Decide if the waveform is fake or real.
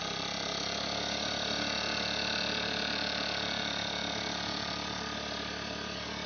real